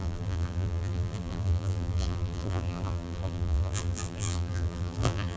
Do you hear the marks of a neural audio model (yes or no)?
yes